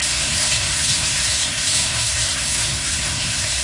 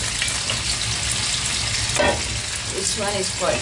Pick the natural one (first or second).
second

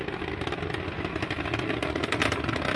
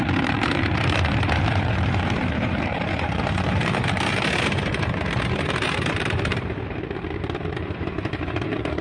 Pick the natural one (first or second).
first